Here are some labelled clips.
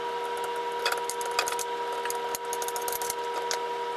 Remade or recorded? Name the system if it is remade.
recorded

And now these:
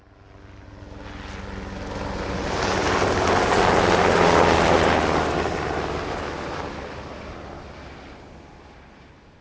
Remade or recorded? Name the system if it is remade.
recorded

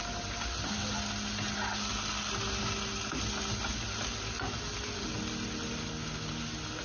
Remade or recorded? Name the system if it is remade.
recorded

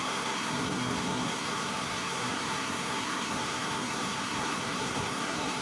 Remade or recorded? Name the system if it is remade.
remade, codec, SNAC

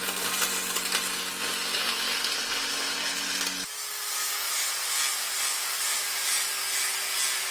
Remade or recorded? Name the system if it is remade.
recorded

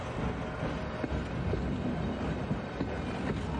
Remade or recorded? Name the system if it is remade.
recorded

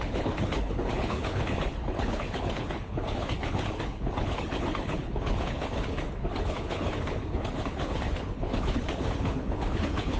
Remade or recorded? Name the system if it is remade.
remade, codec, HILCodec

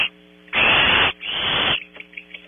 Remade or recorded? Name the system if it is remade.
remade, vocoder, BigVGAN v2